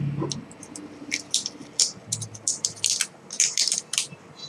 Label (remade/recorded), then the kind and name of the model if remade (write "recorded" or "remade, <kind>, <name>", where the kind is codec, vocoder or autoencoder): recorded